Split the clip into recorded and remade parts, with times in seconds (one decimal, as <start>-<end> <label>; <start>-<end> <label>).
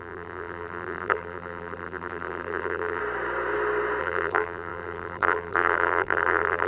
0.0-3.0 remade; 3.0-4.0 recorded; 4.0-6.7 remade